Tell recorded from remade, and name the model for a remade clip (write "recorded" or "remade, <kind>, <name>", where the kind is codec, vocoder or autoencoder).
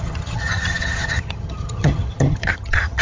remade, vocoder, HiFi-GAN